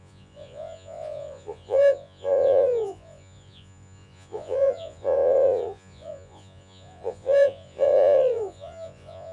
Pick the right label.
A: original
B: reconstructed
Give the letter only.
B